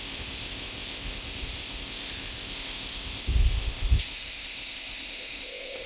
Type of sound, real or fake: fake